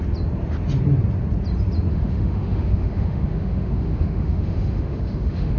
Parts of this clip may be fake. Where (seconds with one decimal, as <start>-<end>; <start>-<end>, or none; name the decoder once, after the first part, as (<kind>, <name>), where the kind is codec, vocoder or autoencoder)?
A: 1.9-5.6 (autoencoder, DAC-VAE)